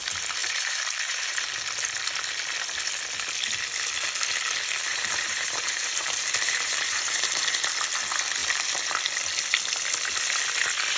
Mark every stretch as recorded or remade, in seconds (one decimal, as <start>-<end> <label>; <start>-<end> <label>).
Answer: 0.0-0.4 recorded; 0.4-1.7 remade; 1.7-4.9 recorded; 4.9-7.7 remade; 7.7-8.4 recorded; 8.4-9.0 remade; 9.0-11.0 recorded